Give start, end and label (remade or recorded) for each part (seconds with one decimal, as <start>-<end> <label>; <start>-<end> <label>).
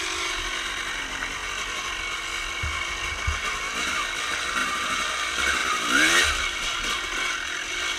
0.0-4.6 recorded; 4.6-5.1 remade; 5.1-8.0 recorded